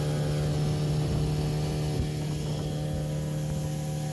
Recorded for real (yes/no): yes